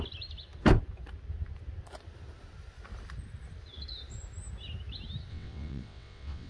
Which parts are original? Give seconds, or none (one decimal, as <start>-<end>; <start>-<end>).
0.0-5.3

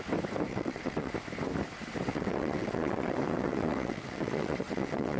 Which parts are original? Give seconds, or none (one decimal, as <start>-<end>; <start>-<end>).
0.0-0.5; 1.1-2.1